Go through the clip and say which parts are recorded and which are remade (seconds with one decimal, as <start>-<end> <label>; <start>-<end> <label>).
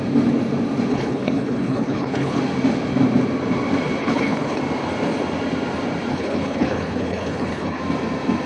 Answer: 0.0-0.9 recorded; 0.9-2.4 remade; 2.4-4.0 recorded; 4.0-4.6 remade; 4.6-6.1 recorded; 6.1-7.8 remade; 7.8-8.5 recorded